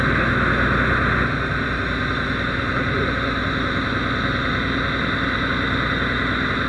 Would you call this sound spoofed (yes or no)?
no